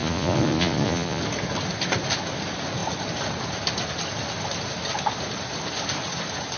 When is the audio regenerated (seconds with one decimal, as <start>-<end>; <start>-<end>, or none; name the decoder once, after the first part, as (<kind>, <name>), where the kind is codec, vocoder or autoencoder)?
0.0-1.2 (vocoder, Vocos)